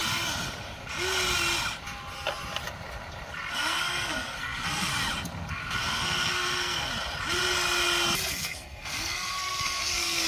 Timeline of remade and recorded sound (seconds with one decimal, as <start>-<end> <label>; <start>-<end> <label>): 0.0-3.5 recorded; 3.5-4.9 remade; 4.9-5.5 recorded; 5.5-6.9 remade; 6.9-8.3 recorded; 8.3-10.3 remade